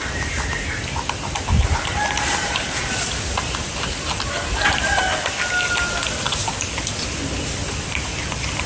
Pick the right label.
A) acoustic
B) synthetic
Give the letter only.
A